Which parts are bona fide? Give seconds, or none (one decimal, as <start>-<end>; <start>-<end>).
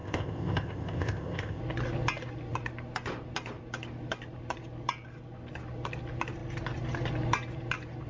1.6-8.1